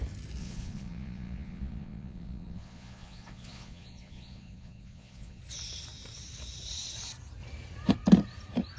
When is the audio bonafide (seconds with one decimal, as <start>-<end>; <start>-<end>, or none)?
0.0-0.4; 5.4-8.8